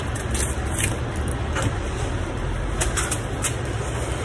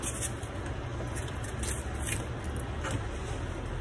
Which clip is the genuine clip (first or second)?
second